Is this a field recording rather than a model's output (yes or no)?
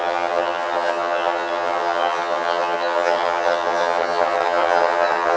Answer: no